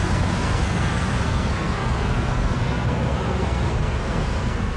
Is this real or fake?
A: fake